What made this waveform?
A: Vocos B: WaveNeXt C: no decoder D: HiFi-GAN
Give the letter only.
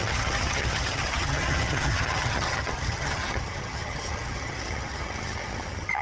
D